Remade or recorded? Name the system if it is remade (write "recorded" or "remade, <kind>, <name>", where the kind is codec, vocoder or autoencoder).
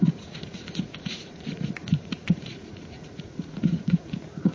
remade, vocoder, Vocos